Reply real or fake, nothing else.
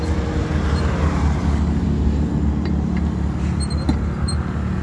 real